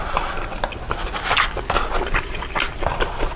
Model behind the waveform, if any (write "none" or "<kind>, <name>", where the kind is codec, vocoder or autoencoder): none